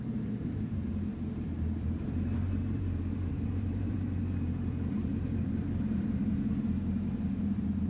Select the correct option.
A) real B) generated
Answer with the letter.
B